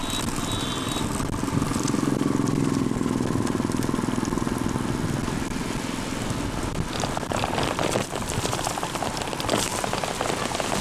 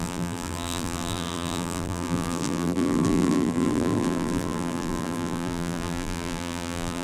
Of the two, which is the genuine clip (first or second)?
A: first